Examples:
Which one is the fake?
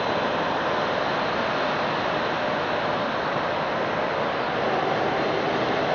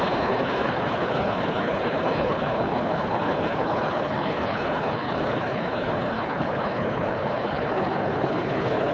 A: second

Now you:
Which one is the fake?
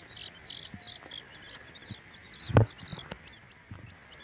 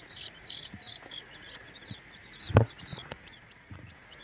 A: second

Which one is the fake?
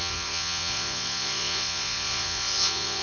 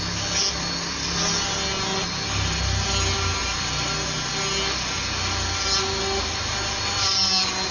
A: first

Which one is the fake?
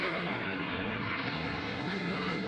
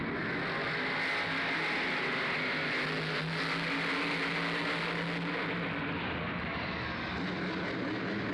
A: first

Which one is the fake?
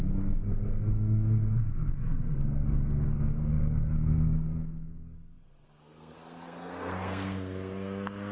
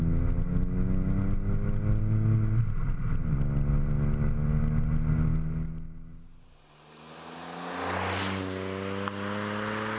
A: first